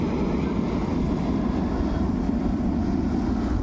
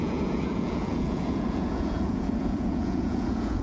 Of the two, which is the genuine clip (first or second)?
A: first